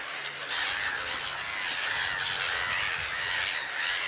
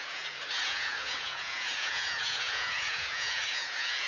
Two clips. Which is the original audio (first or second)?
first